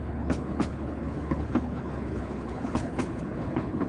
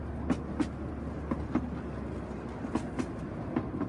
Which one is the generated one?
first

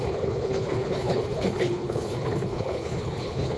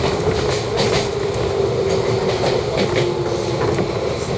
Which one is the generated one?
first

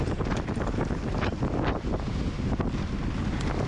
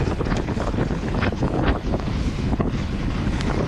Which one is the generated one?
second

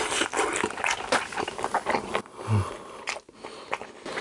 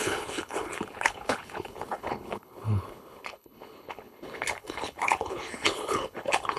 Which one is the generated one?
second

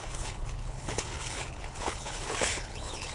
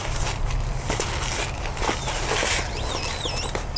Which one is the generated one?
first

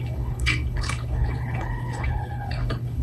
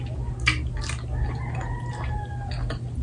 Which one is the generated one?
first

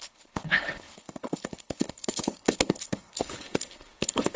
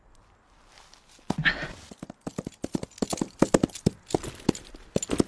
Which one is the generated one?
first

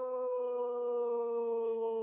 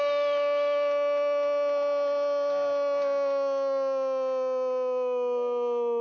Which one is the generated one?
first